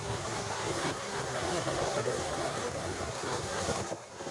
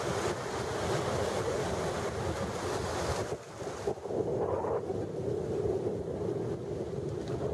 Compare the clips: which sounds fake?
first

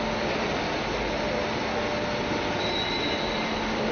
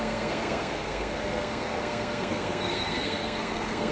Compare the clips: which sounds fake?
second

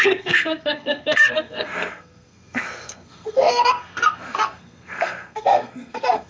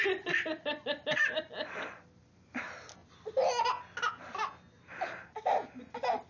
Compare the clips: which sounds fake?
first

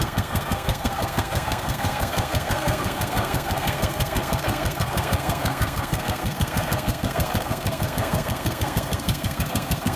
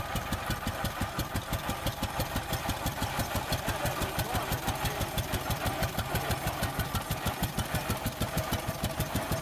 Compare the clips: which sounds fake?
first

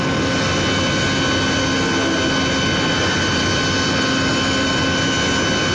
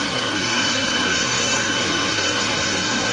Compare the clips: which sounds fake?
second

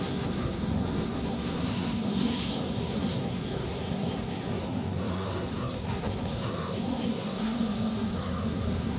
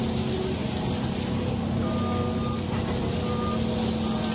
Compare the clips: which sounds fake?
first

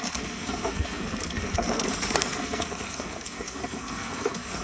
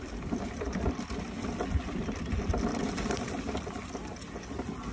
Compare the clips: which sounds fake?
first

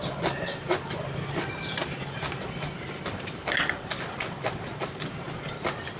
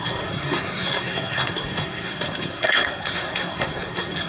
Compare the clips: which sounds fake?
second